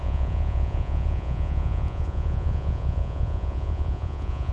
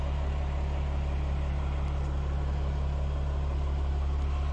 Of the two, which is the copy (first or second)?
first